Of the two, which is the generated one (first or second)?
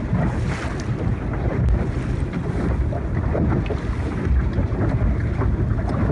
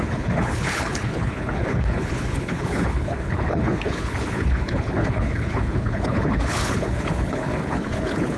second